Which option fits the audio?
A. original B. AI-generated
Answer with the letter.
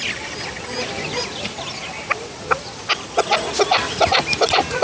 A